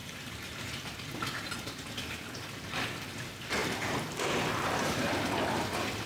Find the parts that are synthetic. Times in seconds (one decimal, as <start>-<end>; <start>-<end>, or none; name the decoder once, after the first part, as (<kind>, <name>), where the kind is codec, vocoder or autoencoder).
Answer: 0.0-0.8 (vocoder, BigVGAN v2); 3.6-5.1